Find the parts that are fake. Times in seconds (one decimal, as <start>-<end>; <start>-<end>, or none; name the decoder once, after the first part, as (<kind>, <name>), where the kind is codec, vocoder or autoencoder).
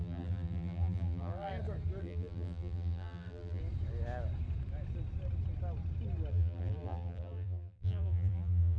0.0-1.5 (vocoder, BigVGAN v2); 2.0-3.6; 6.3-8.8